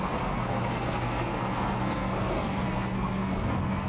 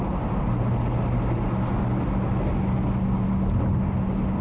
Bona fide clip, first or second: second